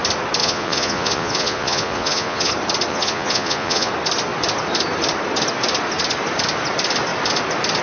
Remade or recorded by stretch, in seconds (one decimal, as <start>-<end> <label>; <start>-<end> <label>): 0.0-0.4 recorded; 0.4-2.5 remade; 2.5-2.9 recorded; 2.9-3.9 remade; 3.9-7.8 recorded